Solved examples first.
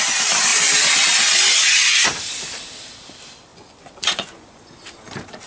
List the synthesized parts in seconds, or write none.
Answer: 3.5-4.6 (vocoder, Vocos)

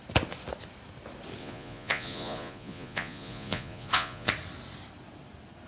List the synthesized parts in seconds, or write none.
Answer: 1.4-4.3 (vocoder, Vocos)

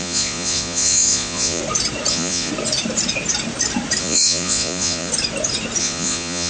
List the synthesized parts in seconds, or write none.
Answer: 0.0-1.6 (vocoder, Vocos); 2.1-2.5; 4.0-5.1; 5.8-6.5

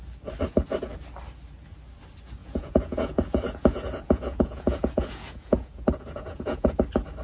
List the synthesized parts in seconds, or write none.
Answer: 2.4-6.7 (vocoder, Vocos)

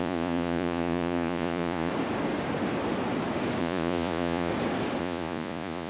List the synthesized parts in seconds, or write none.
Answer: 0.0-1.9 (vocoder, Vocos); 3.6-4.5; 5.0-5.9

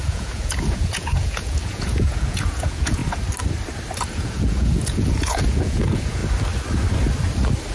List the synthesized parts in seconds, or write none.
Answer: 0.0-3.0 (vocoder, Vocos); 4.0-6.2